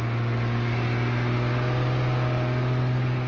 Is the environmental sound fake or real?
real